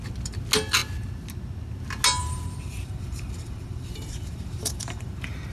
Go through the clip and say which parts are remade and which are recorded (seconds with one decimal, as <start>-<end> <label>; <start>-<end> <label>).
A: 0.0-2.2 recorded; 2.2-5.1 remade; 5.1-5.5 recorded